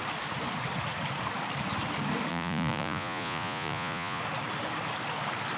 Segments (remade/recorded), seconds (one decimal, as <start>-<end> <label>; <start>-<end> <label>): 0.0-2.3 recorded; 2.3-4.2 remade; 4.2-5.6 recorded